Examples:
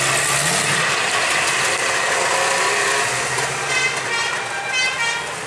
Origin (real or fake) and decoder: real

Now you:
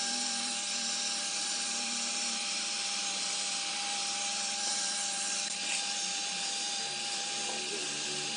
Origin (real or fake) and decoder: fake, vocoder, BigVGAN v2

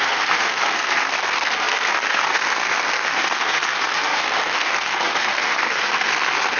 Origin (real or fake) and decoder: fake, codec, SNAC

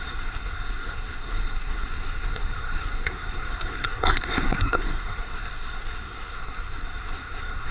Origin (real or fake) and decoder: fake, codec, SNAC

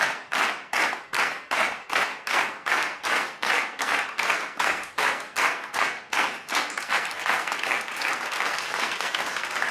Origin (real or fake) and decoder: fake, codec, SNAC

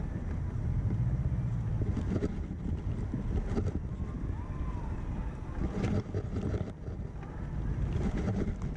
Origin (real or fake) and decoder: real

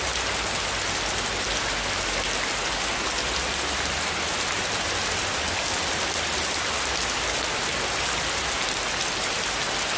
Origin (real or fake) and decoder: real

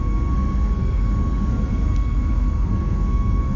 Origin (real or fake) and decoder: fake, codec, SNAC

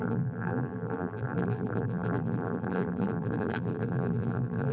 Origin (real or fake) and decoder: fake, vocoder, BigVGAN v2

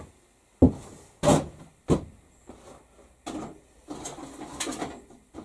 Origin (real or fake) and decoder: real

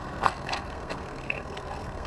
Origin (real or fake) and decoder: fake, codec, SNAC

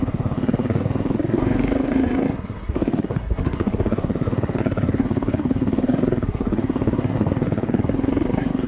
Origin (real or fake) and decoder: fake, codec, SNAC